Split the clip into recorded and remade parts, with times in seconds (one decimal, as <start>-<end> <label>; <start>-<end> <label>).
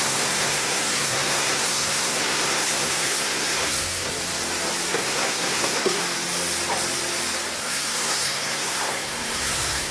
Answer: 0.0-4.1 remade; 4.1-4.9 recorded; 4.9-6.0 remade; 6.0-7.6 recorded; 7.6-9.9 remade